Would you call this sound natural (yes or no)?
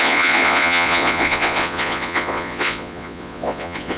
no